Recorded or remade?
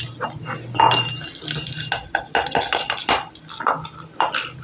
recorded